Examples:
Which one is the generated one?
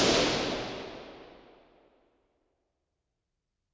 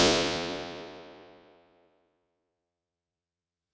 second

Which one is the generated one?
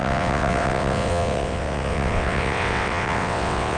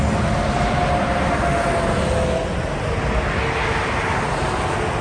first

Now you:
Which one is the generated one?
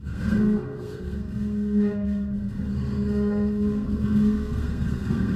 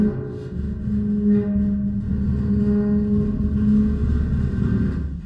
first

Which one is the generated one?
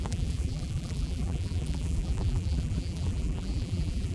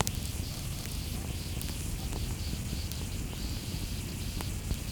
first